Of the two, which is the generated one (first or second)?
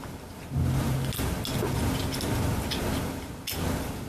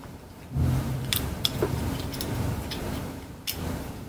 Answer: second